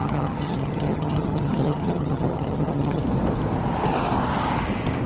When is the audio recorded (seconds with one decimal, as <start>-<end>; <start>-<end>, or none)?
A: 3.0-5.1

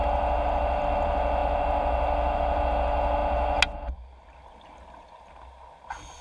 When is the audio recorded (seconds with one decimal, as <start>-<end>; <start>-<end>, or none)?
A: 0.0-6.2

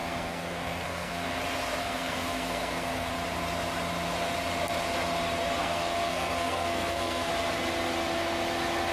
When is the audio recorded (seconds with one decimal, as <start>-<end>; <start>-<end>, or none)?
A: 1.4-1.8; 3.1-5.6; 7.3-8.9

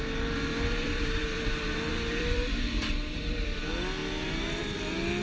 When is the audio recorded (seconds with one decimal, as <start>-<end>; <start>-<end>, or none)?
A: 0.0-0.5; 3.6-5.2